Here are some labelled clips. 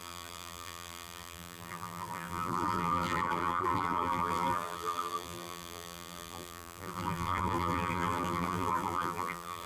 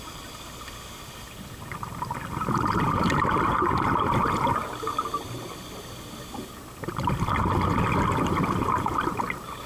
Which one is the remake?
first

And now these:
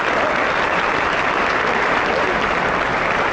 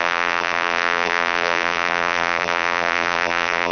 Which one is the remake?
second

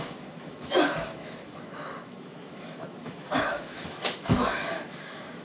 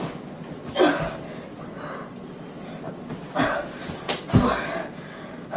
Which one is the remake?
first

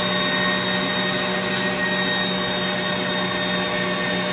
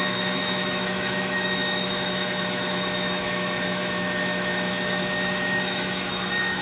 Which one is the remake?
second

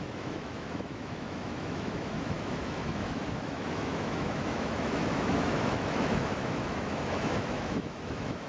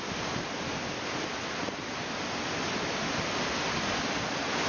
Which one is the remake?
first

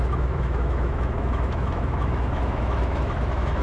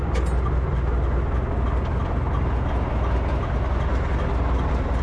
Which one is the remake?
first